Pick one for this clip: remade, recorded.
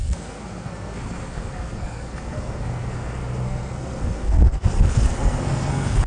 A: remade